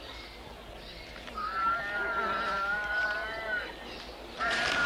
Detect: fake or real real